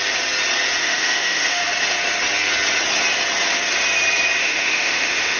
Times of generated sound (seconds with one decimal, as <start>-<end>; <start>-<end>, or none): 0.8-1.7; 4.4-5.4